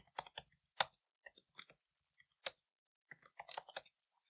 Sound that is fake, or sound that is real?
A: real